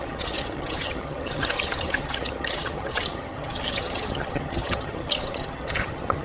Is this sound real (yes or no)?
no